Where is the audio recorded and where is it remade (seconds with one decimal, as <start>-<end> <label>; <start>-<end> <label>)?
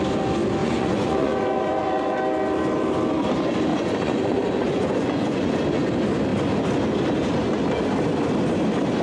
0.0-0.6 recorded; 0.6-2.2 remade; 2.2-3.7 recorded; 3.7-5.5 remade; 5.5-9.0 recorded